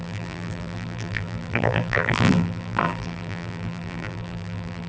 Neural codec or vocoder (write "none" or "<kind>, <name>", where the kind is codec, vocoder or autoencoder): vocoder, BigVGAN v2